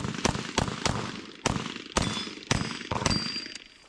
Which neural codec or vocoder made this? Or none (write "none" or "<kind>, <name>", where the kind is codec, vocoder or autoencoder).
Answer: none